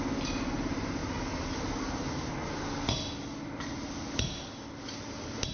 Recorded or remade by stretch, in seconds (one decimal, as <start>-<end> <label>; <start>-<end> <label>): 0.0-5.5 recorded